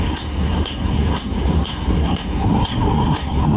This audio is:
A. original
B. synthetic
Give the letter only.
B